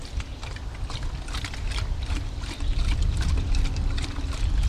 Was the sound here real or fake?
real